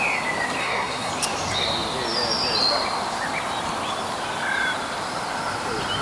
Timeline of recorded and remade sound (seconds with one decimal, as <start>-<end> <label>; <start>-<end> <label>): 0.0-0.6 recorded; 0.6-1.1 remade; 1.1-6.0 recorded